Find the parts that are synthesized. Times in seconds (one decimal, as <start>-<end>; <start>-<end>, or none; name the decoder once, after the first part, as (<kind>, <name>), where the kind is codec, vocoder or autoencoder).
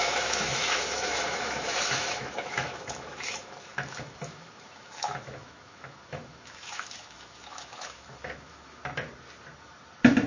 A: 0.0-8.8 (autoencoder, DAC-VAE)